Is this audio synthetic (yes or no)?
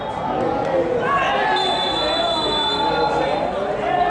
no